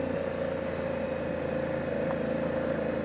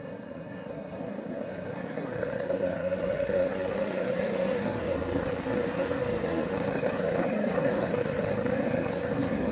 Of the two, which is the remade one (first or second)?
second